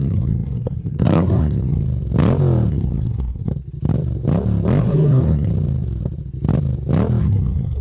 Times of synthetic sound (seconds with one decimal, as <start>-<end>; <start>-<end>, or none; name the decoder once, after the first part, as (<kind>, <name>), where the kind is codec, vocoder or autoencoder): 0.0-1.8 (codec, SNAC); 2.7-3.5; 4.8-5.5; 7.2-7.8